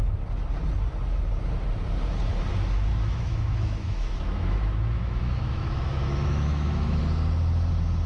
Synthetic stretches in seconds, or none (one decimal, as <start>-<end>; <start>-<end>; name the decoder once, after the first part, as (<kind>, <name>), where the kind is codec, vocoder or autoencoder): 2.9-7.0 (autoencoder, DAC-VAE)